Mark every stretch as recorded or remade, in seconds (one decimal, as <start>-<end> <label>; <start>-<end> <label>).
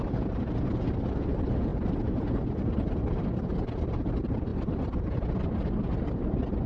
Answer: 0.0-6.7 recorded